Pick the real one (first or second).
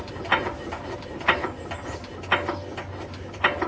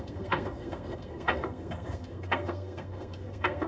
first